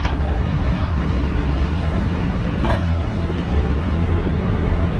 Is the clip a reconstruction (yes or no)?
yes